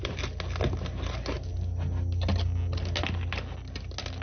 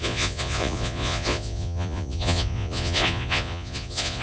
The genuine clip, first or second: first